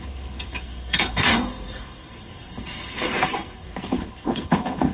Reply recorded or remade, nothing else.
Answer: remade